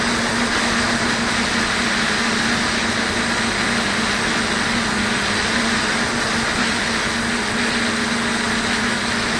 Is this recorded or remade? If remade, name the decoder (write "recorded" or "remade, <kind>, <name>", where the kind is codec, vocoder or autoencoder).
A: recorded